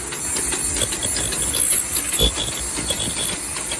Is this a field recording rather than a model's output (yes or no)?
yes